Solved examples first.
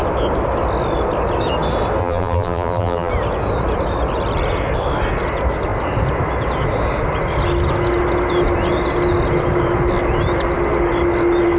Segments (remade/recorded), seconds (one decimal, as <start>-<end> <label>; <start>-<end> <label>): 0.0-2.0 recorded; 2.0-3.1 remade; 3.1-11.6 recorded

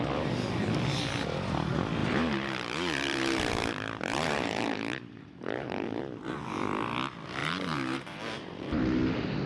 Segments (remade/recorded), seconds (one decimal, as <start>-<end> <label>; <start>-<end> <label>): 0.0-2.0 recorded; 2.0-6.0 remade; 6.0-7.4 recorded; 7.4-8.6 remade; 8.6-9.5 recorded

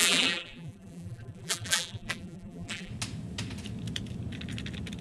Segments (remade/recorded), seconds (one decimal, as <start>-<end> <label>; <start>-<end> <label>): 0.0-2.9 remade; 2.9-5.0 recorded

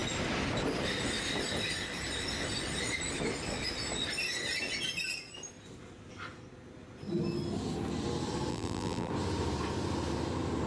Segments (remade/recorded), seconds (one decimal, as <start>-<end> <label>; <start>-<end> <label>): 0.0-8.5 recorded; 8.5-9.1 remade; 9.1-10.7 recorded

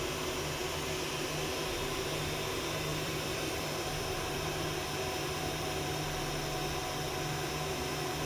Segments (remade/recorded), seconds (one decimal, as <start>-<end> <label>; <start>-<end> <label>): 0.0-2.9 recorded; 2.9-6.0 remade; 6.0-8.3 recorded

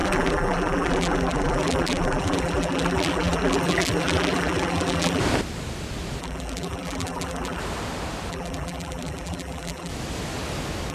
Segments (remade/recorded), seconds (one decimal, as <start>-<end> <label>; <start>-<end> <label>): 0.0-5.2 remade; 5.2-6.2 recorded; 6.2-7.6 remade; 7.6-8.3 recorded; 8.3-9.9 remade; 9.9-10.9 recorded

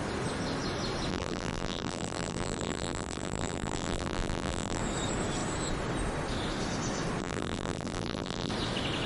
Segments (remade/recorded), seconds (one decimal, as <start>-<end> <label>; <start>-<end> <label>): 0.0-1.1 recorded; 1.1-4.8 remade; 4.8-7.2 recorded; 7.2-8.5 remade; 8.5-9.1 recorded

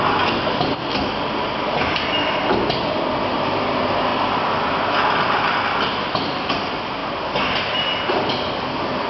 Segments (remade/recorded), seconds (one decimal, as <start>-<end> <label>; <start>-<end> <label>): 0.0-9.1 recorded